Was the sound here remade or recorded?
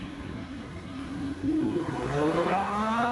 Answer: remade